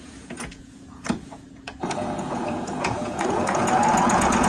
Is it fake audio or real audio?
fake